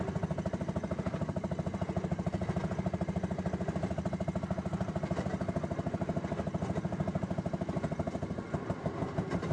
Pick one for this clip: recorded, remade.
recorded